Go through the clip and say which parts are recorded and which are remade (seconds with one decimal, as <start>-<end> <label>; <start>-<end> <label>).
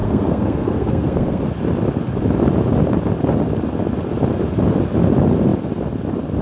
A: 0.0-1.4 remade; 1.4-6.4 recorded